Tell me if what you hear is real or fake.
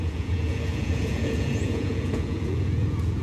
fake